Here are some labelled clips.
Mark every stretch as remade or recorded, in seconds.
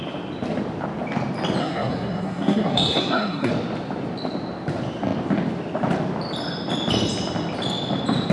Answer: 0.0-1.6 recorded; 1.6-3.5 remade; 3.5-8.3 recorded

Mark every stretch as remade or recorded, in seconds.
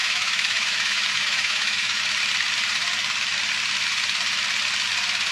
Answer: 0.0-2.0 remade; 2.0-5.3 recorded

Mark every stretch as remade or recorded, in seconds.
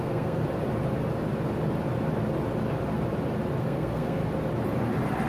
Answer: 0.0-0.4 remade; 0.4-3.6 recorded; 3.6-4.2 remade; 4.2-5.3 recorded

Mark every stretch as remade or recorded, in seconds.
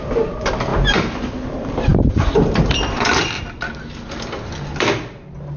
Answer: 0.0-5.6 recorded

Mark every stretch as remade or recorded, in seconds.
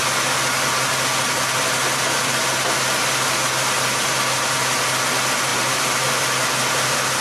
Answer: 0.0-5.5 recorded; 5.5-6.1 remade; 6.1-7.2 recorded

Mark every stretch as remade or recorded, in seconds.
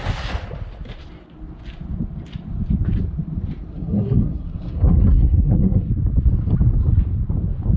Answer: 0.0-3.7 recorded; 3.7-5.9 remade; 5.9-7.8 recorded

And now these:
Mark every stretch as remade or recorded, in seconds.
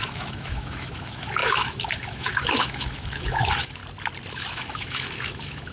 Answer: 0.0-3.8 remade; 3.8-4.3 recorded; 4.3-5.7 remade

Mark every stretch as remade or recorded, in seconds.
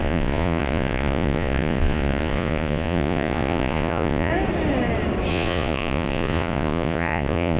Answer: 0.0-4.3 remade; 4.3-5.3 recorded; 5.3-7.6 remade